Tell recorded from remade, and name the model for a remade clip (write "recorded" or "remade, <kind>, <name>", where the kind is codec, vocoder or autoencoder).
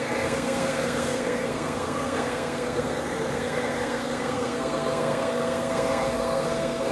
remade, codec, SNAC